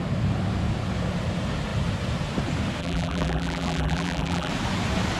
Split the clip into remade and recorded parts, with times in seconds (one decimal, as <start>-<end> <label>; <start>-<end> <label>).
0.0-2.8 recorded; 2.8-4.5 remade; 4.5-5.2 recorded